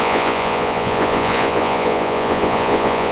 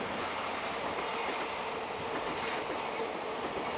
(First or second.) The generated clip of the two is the first